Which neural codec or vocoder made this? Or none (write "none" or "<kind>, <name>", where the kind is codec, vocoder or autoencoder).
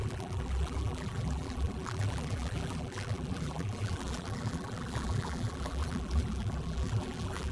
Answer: vocoder, BigVGAN v2